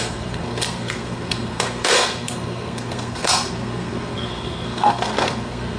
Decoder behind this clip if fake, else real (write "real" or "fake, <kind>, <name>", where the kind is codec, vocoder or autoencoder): fake, codec, SNAC